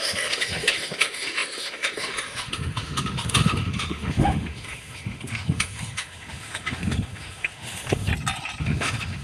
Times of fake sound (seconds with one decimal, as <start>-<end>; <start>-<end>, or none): 0.0-8.1; 8.6-9.2